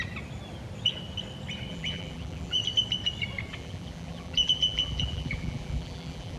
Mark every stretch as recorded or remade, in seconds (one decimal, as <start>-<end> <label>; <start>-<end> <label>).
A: 0.0-1.7 recorded; 1.7-2.6 remade; 2.6-3.5 recorded; 3.5-6.4 remade